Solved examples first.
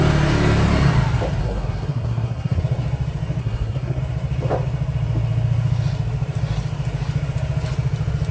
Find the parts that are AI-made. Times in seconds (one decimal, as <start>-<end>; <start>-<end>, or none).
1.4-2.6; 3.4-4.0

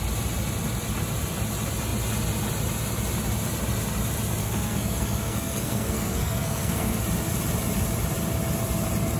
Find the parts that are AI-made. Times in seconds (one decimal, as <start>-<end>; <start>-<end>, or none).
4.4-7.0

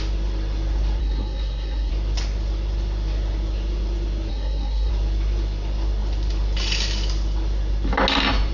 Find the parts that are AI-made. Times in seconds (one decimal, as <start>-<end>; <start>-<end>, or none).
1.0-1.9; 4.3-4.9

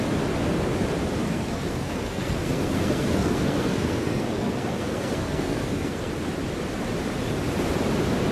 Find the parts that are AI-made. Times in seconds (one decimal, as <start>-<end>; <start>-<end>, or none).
1.2-6.1

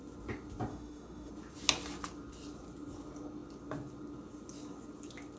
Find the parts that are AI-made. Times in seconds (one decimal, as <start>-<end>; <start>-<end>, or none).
0.7-1.3